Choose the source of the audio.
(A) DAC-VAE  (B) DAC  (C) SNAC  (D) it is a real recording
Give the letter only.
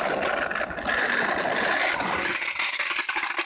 D